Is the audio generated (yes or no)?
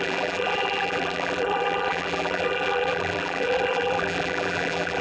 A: yes